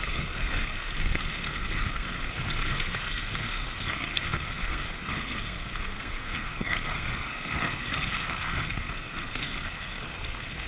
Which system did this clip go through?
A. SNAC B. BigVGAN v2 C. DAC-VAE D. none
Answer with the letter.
A